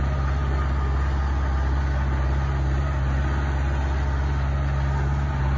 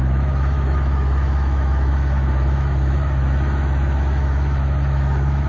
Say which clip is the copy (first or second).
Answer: second